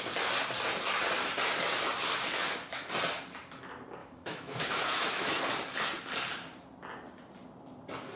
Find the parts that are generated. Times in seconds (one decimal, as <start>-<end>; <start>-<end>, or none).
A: 4.0-5.4